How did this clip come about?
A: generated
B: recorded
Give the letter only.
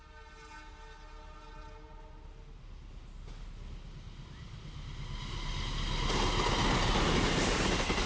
B